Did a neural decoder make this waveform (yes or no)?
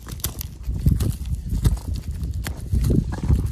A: no